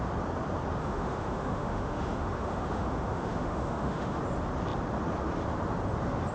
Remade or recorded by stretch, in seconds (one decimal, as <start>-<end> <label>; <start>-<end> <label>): 0.0-0.8 recorded; 0.8-4.2 remade; 4.2-6.3 recorded